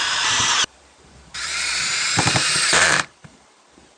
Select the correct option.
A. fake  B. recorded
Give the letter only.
A